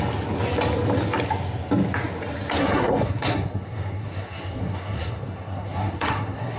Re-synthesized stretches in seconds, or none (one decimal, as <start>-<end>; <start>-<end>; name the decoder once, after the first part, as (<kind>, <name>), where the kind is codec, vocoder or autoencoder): 2.6-6.6 (codec, SNAC)